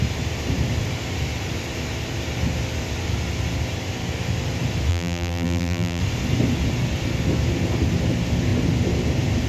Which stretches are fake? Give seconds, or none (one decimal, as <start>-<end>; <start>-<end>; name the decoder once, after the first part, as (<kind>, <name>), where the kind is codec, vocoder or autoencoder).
4.9-6.0 (vocoder, BigVGAN v2)